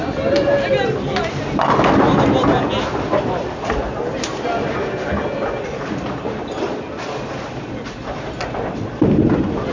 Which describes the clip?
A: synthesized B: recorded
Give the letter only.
B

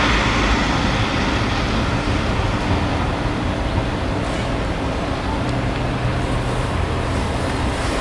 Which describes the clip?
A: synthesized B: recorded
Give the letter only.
B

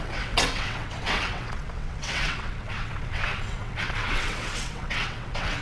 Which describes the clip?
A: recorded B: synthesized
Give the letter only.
B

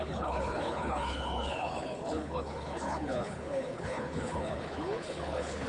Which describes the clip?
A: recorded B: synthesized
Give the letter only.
B